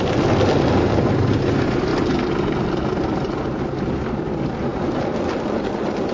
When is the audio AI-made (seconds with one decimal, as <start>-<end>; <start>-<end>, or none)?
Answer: none